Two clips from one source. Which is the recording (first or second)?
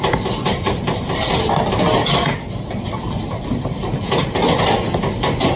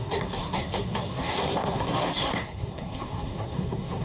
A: first